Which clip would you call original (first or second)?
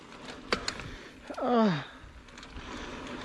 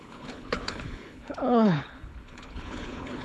first